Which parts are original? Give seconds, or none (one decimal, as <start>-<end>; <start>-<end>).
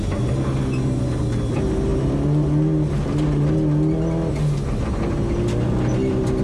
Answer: 0.0-6.4